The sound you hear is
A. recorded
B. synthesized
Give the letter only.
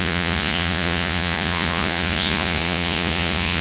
B